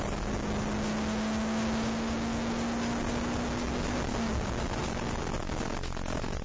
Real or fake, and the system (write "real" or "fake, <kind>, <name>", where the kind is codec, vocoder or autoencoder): real